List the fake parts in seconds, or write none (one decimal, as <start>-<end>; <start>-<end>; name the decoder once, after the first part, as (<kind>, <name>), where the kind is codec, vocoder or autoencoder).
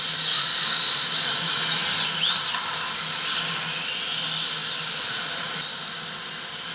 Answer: none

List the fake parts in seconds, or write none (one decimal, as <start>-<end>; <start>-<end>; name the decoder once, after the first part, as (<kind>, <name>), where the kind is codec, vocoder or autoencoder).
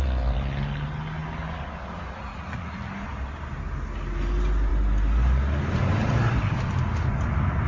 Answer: 2.3-2.9 (vocoder, Vocos)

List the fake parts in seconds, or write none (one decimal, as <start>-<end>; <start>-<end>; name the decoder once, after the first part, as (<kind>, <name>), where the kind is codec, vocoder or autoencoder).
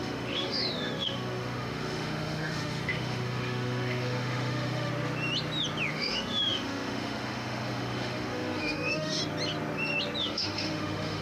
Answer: 0.0-4.9 (autoencoder, DAC-VAE); 5.9-9.2; 10.2-11.2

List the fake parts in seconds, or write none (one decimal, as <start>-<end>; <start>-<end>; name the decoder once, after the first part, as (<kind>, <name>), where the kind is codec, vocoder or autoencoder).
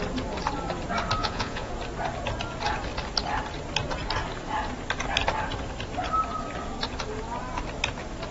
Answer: 1.2-1.7 (vocoder, Vocos)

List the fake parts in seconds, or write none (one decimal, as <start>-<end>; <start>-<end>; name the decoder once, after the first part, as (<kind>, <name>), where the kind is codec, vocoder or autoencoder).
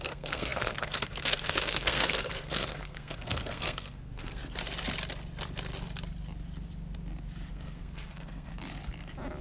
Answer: 0.0-4.4 (codec, SNAC); 7.5-8.5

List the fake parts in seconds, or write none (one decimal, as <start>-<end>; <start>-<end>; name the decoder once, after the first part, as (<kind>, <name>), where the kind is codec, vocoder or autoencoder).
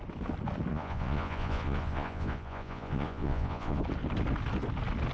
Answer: 0.7-3.8 (vocoder, Vocos)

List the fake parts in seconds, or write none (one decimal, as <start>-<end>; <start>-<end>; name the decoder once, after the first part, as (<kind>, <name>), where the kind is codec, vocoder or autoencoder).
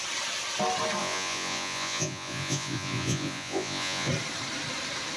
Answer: 1.0-4.1 (vocoder, Vocos)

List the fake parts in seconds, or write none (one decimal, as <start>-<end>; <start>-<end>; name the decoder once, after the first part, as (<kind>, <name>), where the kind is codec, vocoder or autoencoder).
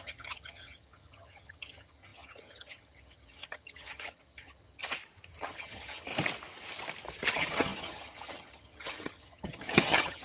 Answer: 0.0-4.8 (vocoder, HiFi-GAN); 5.4-6.1; 7.3-10.2